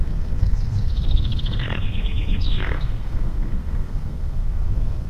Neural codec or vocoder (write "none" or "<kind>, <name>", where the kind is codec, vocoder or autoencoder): codec, SNAC